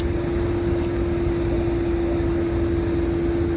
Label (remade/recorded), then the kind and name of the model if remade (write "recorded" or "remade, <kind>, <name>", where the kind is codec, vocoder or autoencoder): recorded